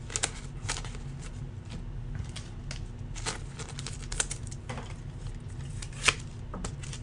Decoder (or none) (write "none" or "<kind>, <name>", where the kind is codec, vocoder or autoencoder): none